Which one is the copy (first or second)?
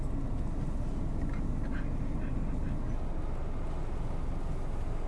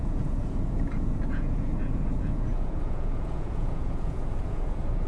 second